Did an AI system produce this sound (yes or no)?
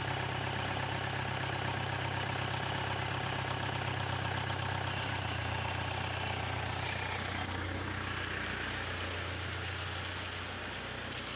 no